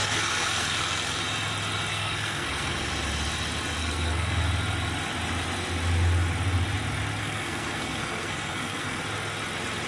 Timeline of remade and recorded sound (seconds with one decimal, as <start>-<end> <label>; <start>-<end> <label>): 0.0-1.2 remade; 1.2-1.9 recorded; 1.9-2.9 remade; 2.9-3.8 recorded; 3.8-4.4 remade; 4.4-7.2 recorded; 7.2-9.0 remade; 9.0-9.9 recorded